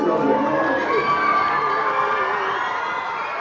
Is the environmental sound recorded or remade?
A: recorded